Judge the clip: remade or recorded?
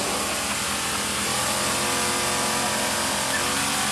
recorded